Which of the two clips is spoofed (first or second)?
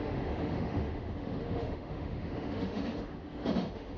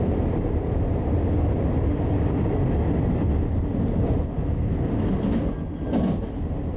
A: first